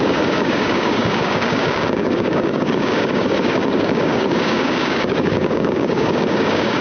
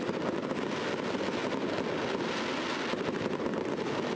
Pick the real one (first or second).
second